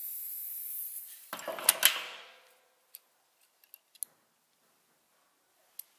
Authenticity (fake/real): real